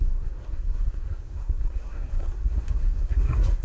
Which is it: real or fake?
fake